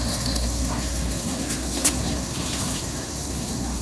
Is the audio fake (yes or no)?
yes